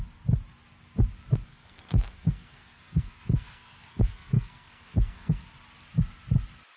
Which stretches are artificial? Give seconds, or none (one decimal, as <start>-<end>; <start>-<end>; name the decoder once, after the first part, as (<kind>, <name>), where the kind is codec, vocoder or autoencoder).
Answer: 1.5-5.4 (codec, SNAC)